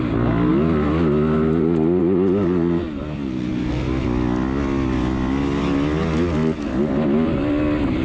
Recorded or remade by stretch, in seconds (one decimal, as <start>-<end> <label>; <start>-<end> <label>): 0.0-8.0 recorded